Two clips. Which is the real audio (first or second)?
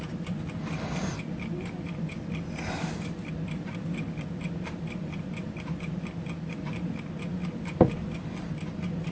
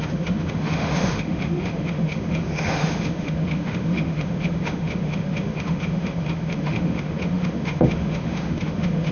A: first